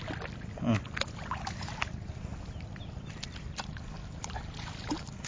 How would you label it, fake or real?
real